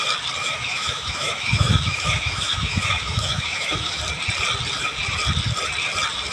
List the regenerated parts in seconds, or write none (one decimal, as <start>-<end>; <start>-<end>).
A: 0.4-4.0